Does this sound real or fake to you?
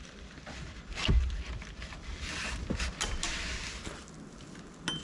real